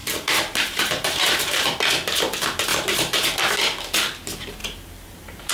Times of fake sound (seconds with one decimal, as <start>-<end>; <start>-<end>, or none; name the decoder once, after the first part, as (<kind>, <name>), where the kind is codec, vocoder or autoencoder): 0.0-1.6 (vocoder, BigVGAN v2); 2.7-3.4; 4.6-5.5